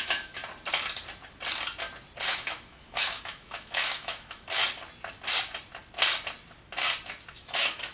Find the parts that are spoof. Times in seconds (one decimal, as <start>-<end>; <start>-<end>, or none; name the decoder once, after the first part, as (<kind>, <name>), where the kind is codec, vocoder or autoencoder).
0.0-0.4 (autoencoder, DAC-VAE); 2.3-4.6; 7.3-7.9